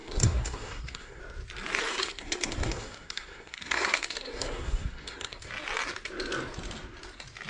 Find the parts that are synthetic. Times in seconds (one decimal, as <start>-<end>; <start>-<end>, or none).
0.0-1.2; 1.9-5.5